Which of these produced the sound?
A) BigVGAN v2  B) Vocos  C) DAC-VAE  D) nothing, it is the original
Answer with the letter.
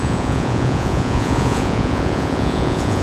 B